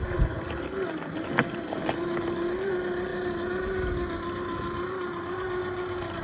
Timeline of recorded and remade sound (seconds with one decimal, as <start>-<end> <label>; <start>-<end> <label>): 0.0-6.2 recorded